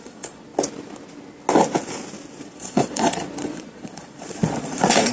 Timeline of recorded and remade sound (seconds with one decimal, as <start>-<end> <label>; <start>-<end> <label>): 0.0-0.5 remade; 0.5-2.4 recorded; 2.4-5.1 remade